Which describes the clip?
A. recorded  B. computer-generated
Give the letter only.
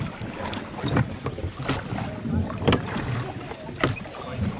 A